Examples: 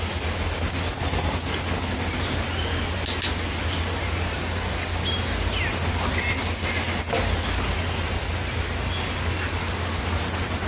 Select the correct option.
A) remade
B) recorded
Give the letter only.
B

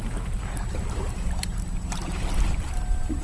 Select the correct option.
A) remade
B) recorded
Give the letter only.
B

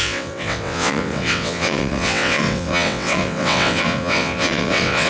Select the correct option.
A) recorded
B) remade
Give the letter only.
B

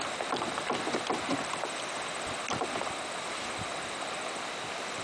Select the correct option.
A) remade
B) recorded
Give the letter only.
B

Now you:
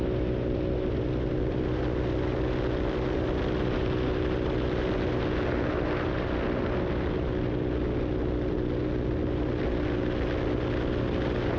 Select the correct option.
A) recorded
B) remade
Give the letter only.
A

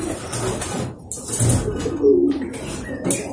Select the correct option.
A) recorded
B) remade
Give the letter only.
A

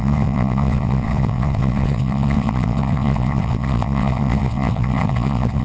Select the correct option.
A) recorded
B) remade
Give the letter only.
B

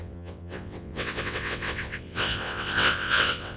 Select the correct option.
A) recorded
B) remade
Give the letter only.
B